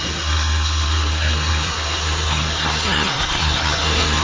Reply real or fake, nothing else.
fake